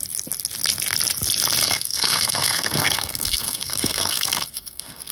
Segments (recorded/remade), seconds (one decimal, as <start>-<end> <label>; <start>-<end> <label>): 0.0-1.6 recorded; 1.6-5.1 remade